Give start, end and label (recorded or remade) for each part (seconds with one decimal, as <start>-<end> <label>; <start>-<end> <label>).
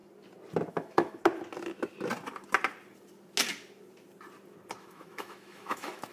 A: 0.0-0.7 recorded; 0.7-1.2 remade; 1.2-4.8 recorded; 4.8-6.1 remade